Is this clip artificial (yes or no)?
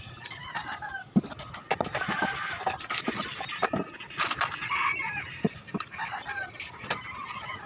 no